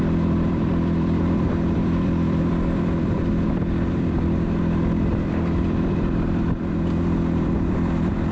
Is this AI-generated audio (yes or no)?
yes